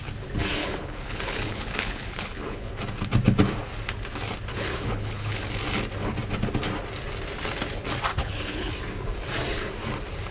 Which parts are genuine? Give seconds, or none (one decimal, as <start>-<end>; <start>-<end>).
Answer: 0.0-0.6; 2.8-4.5; 5.4-8.1; 8.7-10.3